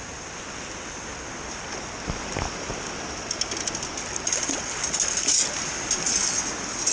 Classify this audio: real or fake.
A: real